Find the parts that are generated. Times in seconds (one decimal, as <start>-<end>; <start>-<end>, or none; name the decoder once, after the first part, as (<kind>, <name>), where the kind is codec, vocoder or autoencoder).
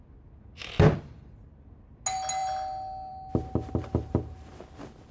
3.8-4.5 (vocoder, BigVGAN v2)